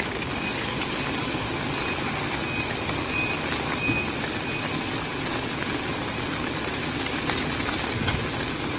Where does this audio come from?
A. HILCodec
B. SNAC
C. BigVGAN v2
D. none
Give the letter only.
D